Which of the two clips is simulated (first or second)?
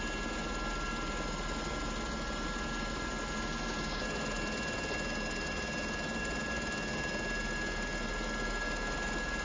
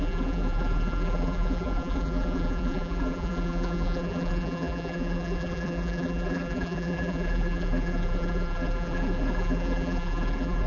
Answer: second